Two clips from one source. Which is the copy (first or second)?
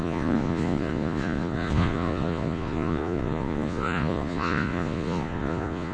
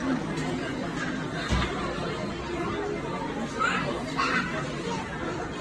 first